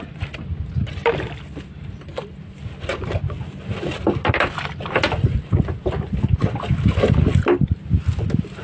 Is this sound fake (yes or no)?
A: no